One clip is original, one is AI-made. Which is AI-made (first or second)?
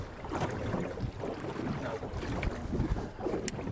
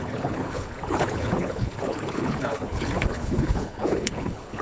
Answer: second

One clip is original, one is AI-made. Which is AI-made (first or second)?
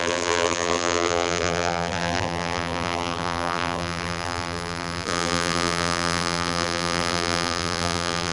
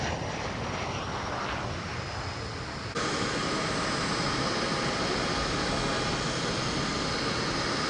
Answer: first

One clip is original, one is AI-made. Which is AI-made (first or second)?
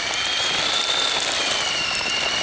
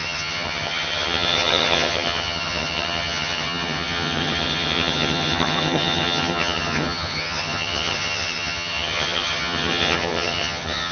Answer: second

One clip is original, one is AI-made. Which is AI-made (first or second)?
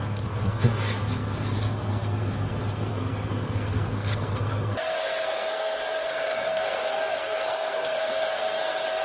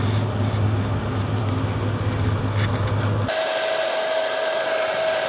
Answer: first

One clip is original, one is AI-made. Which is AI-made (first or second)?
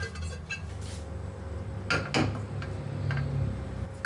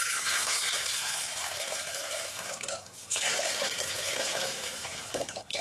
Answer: second